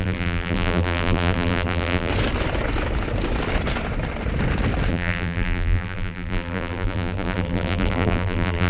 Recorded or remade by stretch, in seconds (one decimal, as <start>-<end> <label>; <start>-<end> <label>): 0.0-2.1 remade; 2.1-4.9 recorded; 4.9-8.7 remade